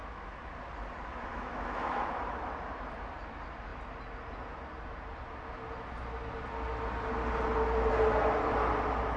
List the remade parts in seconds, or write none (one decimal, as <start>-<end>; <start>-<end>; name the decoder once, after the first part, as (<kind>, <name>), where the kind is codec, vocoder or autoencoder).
0.0-0.5 (autoencoder, DAC-VAE); 1.3-2.2